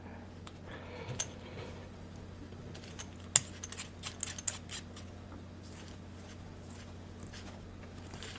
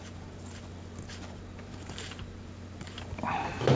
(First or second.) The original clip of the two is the first